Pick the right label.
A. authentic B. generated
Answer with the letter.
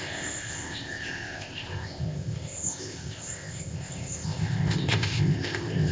B